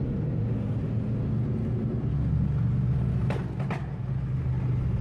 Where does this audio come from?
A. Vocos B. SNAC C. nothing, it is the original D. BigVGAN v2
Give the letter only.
C